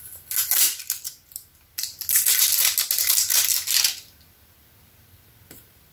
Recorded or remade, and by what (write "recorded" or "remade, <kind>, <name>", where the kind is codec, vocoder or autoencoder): recorded